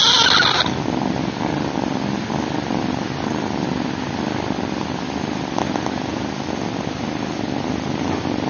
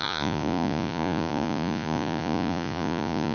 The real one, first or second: first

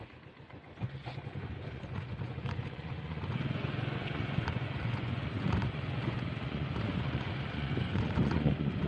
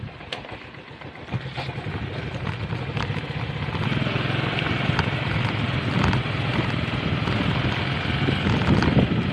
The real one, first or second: second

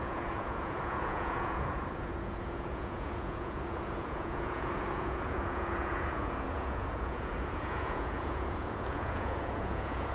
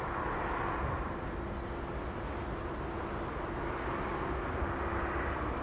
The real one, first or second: second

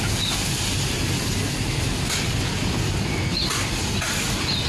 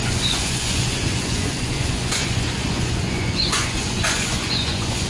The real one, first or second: first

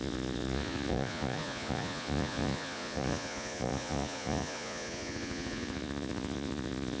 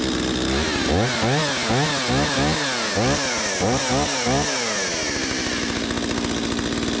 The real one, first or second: second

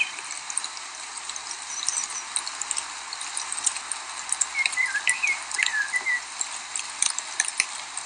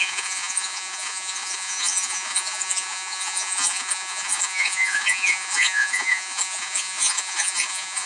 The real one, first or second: first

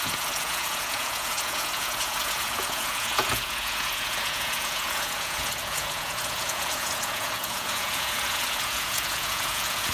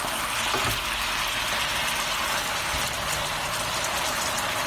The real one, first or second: second